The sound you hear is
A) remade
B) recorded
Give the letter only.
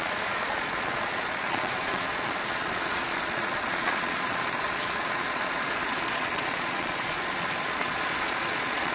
A